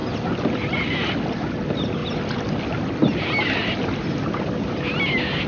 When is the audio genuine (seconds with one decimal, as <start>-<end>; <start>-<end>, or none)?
0.0-5.5